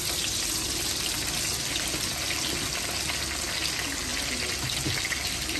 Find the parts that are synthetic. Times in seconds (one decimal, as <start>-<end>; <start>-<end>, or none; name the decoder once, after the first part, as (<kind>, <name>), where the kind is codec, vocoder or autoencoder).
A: none